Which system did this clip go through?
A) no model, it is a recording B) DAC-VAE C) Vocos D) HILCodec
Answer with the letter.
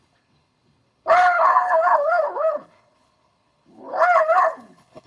D